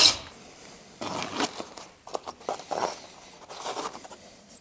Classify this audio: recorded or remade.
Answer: recorded